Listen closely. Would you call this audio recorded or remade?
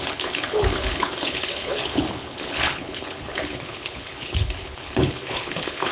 remade